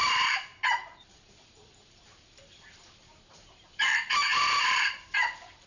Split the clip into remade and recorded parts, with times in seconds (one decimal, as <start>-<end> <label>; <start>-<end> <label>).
0.0-0.5 remade; 0.5-1.4 recorded; 1.4-5.7 remade